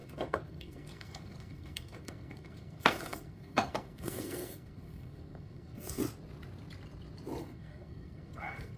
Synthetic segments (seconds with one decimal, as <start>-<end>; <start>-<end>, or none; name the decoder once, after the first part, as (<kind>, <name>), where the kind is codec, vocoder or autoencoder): 0.0-6.0 (codec, SNAC); 7.4-8.8